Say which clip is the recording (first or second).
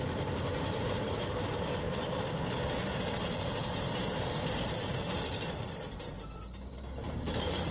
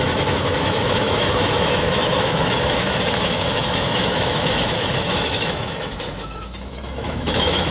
first